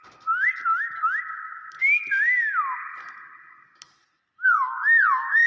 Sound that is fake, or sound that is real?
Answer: real